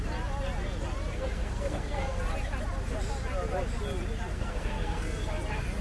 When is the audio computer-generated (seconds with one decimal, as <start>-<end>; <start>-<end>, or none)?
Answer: 1.1-2.2; 4.3-5.3